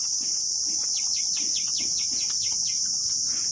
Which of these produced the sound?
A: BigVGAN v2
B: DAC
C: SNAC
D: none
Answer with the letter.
D